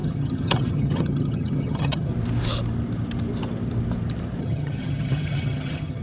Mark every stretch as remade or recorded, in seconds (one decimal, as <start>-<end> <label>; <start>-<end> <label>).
0.0-2.1 remade; 2.1-4.4 recorded; 4.4-6.0 remade